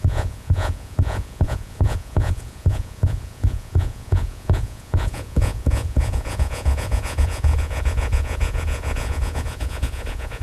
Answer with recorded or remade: remade